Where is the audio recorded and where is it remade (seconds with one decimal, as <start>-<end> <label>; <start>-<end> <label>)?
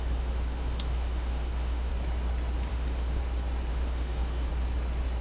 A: 0.0-1.9 remade; 1.9-2.7 recorded; 2.7-3.2 remade; 3.2-3.7 recorded; 3.7-4.5 remade; 4.5-5.2 recorded